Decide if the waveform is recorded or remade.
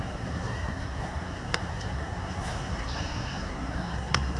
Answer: remade